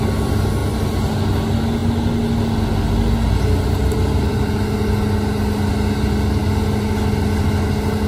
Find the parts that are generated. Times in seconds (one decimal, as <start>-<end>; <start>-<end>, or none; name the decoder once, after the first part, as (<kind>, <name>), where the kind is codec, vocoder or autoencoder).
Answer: none